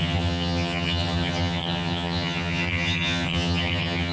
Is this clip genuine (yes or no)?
no